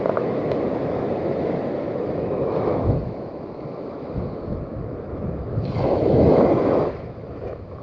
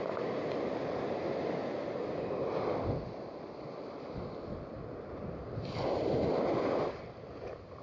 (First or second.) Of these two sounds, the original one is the second